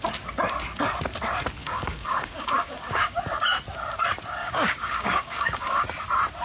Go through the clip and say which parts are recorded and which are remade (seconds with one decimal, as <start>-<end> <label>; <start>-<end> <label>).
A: 0.0-1.6 recorded; 1.6-3.2 remade; 3.2-4.4 recorded; 4.4-5.8 remade; 5.8-6.4 recorded